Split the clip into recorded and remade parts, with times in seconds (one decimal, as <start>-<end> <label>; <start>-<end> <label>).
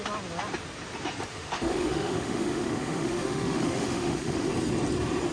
0.0-1.3 recorded; 1.3-4.5 remade; 4.5-5.3 recorded